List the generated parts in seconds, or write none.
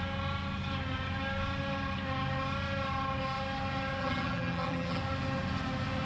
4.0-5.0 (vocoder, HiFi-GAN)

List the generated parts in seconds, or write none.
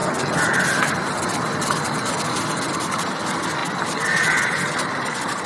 0.0-3.6 (vocoder, BigVGAN v2); 5.0-5.5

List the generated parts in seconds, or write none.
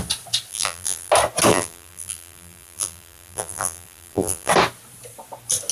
0.5-1.1 (vocoder, BigVGAN v2); 1.5-4.5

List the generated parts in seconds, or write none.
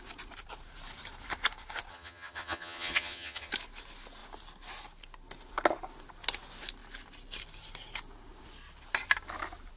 1.9-3.5 (vocoder, HiFi-GAN)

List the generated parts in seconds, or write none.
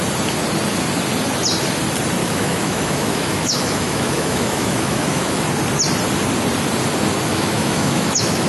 2.2-5.4 (autoencoder, DAC-VAE); 7.3-8.5